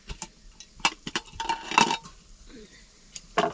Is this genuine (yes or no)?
yes